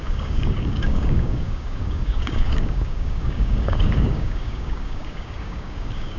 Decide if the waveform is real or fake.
fake